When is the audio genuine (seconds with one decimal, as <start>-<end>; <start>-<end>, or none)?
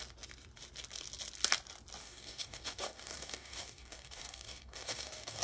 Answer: 0.0-2.0